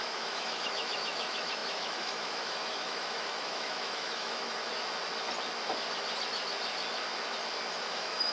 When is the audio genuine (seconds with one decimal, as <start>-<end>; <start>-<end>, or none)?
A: 4.6-7.8